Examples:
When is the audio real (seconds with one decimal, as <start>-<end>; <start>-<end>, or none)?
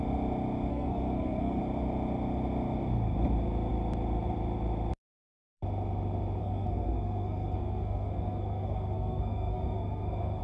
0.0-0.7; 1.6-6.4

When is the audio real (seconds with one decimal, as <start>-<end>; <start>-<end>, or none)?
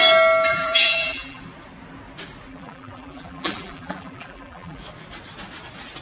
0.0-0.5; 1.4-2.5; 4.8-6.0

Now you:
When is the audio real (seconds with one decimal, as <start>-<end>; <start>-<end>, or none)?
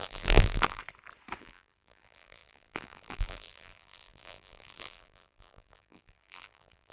0.8-1.4